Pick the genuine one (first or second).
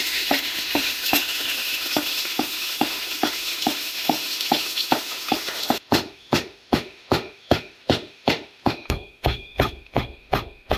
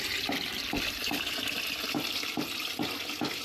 second